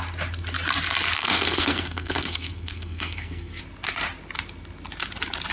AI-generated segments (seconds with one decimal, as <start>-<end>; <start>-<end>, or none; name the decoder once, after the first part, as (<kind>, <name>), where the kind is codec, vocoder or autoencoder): 1.2-3.6 (codec, SNAC)